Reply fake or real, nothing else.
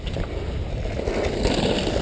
real